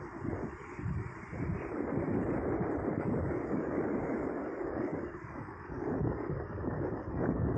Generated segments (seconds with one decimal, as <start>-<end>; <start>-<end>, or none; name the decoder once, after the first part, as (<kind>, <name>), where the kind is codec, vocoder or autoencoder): 2.9-7.6 (codec, DAC)